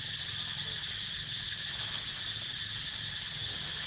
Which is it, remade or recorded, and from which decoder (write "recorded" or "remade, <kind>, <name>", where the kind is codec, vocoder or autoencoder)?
remade, vocoder, BigVGAN v2